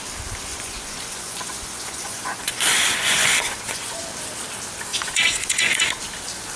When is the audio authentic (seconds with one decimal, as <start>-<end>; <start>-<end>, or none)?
0.0-0.5; 4.0-4.9; 5.8-6.6